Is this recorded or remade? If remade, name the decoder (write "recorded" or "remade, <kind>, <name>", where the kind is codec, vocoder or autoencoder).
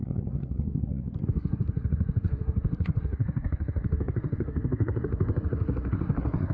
remade, codec, SNAC